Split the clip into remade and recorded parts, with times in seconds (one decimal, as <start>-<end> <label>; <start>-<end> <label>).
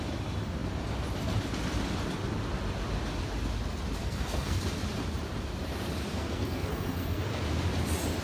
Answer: 0.0-4.0 recorded; 4.0-4.6 remade; 4.6-6.1 recorded; 6.1-7.2 remade; 7.2-8.2 recorded